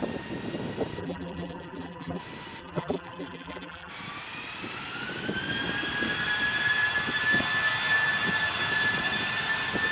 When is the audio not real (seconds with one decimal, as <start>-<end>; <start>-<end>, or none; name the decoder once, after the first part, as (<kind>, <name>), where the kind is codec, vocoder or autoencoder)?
1.0-2.2 (vocoder, BigVGAN v2); 2.6-3.9